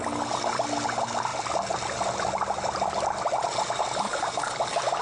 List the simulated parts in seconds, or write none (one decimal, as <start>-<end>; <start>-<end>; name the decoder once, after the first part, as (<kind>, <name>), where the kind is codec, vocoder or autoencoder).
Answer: none